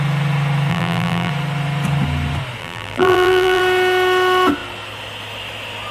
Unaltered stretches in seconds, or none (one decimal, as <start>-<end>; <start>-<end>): 0.0-0.7; 1.3-2.6; 3.6-5.9